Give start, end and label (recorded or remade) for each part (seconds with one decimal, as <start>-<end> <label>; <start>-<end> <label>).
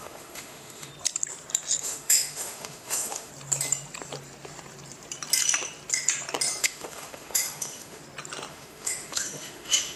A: 0.0-0.9 remade; 0.9-1.8 recorded; 1.8-3.3 remade; 3.3-6.6 recorded; 6.6-8.0 remade; 8.0-8.5 recorded; 8.5-10.0 remade